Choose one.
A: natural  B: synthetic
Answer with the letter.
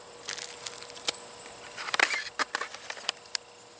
A